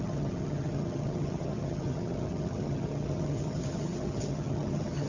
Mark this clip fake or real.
fake